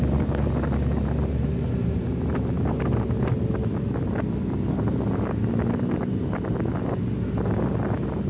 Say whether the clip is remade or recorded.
recorded